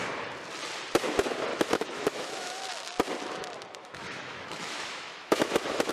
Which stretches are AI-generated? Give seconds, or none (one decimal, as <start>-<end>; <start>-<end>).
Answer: 1.5-2.6; 3.8-5.9